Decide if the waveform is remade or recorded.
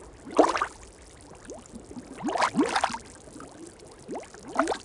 recorded